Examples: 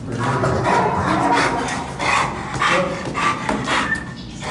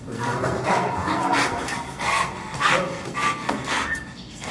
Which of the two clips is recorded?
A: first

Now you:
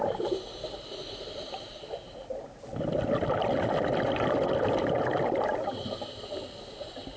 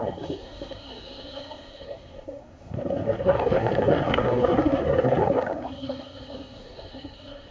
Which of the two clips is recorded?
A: first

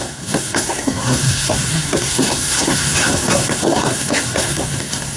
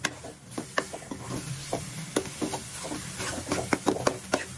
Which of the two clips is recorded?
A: second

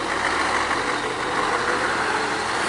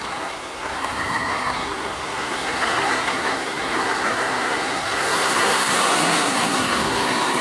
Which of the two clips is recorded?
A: first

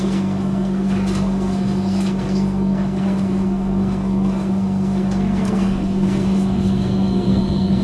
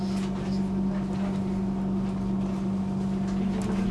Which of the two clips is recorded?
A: second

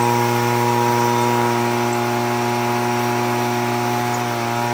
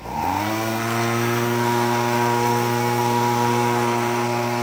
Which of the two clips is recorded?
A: first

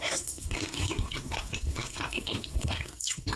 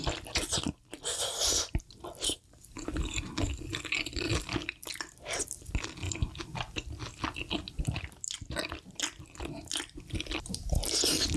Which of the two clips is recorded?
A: second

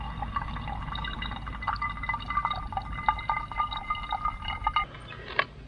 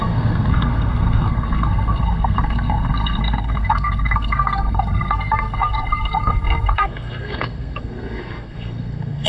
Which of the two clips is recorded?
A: first